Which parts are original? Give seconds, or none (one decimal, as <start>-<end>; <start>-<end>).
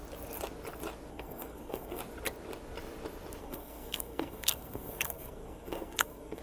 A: 0.0-1.1; 2.0-3.4